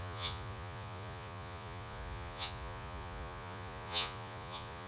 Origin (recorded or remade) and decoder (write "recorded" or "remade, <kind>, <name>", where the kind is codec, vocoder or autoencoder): remade, vocoder, Vocos